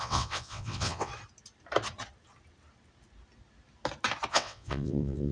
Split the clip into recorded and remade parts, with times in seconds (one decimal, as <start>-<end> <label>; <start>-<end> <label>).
0.0-1.1 remade; 1.1-4.3 recorded; 4.3-5.3 remade